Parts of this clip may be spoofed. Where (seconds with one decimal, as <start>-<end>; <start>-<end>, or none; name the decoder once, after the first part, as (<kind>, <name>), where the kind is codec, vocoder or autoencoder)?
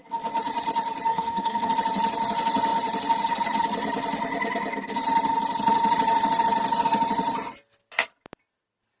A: 1.1-1.7 (codec, SNAC)